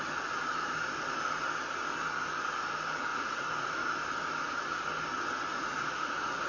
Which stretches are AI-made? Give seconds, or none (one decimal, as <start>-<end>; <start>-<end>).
3.1-3.9; 5.5-6.5

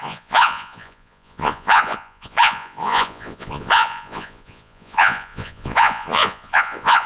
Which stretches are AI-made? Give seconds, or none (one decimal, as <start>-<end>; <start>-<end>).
0.0-7.1

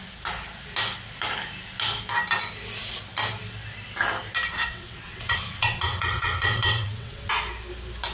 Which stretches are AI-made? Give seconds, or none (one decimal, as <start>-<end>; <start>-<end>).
4.6-7.3

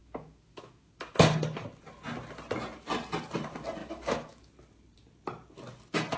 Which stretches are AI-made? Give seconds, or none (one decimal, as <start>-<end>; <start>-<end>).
0.0-0.9; 3.8-4.5

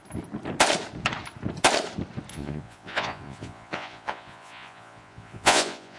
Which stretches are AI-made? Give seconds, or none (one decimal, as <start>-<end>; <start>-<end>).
2.3-6.0

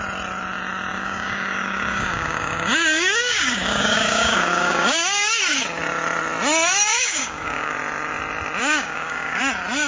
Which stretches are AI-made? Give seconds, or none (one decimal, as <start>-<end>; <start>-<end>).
0.9-5.4; 6.9-7.7; 8.6-9.4

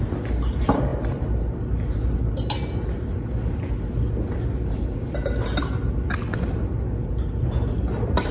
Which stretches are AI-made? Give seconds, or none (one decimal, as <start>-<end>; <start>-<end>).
none